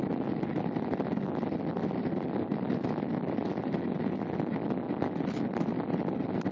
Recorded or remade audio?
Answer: recorded